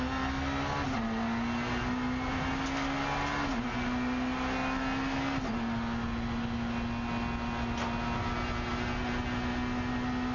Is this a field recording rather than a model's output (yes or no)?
yes